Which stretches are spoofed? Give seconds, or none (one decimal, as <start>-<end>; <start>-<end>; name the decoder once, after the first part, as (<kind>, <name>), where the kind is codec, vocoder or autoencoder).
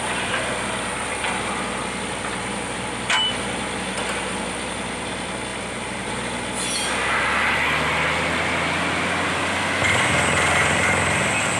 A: 5.5-6.1 (vocoder, BigVGAN v2)